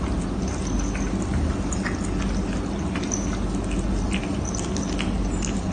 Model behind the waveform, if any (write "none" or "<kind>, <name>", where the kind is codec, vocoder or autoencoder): none